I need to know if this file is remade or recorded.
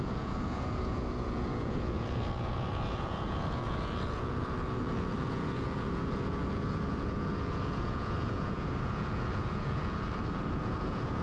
remade